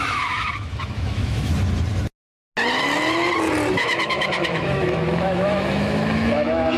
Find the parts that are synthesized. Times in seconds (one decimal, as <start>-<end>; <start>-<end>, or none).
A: 0.0-1.5; 3.7-6.8